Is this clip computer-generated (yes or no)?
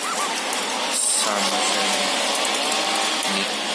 no